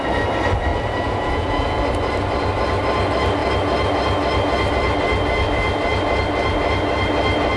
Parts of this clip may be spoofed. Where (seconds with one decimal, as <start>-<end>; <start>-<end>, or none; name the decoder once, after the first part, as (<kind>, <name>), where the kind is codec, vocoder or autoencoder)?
0.7-1.8 (vocoder, Vocos)

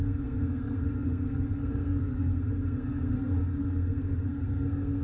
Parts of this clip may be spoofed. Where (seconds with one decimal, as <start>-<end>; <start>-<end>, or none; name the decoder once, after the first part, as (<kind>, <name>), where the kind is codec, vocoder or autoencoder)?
0.0-5.0 (codec, SNAC)